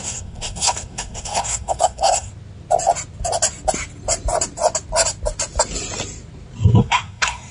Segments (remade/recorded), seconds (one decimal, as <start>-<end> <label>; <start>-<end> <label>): 0.0-2.3 remade; 2.3-6.8 recorded; 6.8-7.5 remade